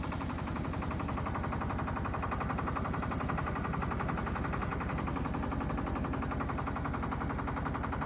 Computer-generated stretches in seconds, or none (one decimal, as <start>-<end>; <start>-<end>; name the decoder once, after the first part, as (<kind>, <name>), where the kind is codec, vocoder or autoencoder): none